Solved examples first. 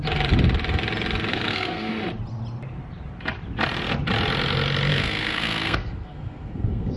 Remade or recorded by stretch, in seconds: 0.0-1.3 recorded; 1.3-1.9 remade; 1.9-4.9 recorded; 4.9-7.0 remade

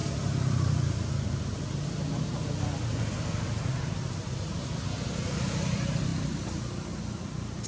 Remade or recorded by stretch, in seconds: 0.0-4.6 recorded; 4.6-7.7 remade

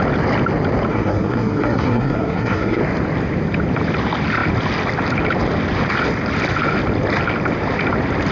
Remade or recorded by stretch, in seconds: 0.0-0.9 recorded; 0.9-2.8 remade; 2.8-8.3 recorded

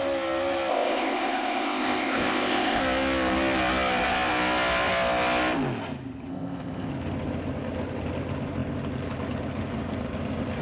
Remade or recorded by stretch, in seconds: 0.0-0.7 recorded; 0.7-2.8 remade; 2.8-6.3 recorded; 6.3-6.9 remade; 6.9-10.6 recorded

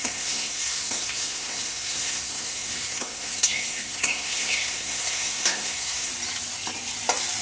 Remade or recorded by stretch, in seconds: 0.0-6.1 remade; 6.1-7.4 recorded

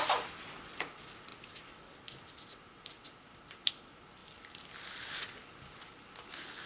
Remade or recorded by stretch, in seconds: 0.0-6.7 recorded